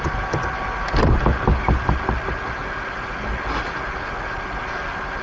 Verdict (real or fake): real